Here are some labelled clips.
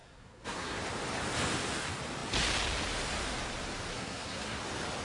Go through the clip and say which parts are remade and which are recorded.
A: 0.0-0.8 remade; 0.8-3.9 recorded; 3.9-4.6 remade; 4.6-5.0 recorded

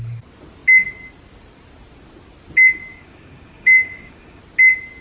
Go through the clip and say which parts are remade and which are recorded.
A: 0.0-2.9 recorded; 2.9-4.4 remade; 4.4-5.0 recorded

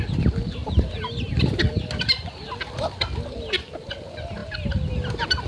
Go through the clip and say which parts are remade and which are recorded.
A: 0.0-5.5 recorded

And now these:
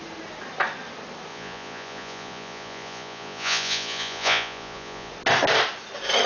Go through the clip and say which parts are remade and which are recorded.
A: 0.0-1.3 recorded; 1.3-5.1 remade; 5.1-6.3 recorded

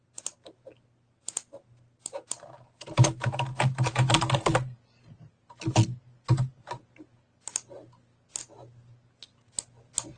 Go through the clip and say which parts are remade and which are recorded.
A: 0.0-10.2 recorded

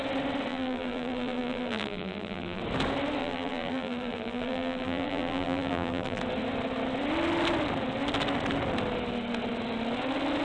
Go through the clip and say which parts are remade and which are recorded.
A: 0.0-0.5 recorded; 0.5-2.6 remade; 2.6-3.2 recorded; 3.2-6.2 remade; 6.2-10.4 recorded

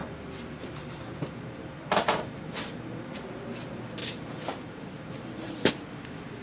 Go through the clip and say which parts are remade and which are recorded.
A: 0.0-2.6 remade; 2.6-4.0 recorded; 4.0-5.7 remade; 5.7-6.4 recorded

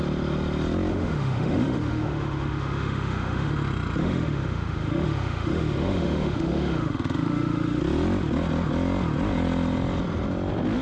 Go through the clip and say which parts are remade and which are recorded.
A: 0.0-0.9 recorded; 0.9-3.5 remade; 3.5-4.0 recorded; 4.0-7.8 remade; 7.8-10.8 recorded